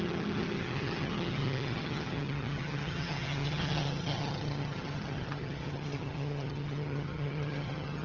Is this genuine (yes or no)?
no